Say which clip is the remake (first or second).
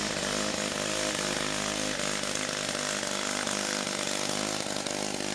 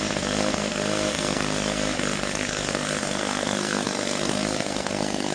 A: second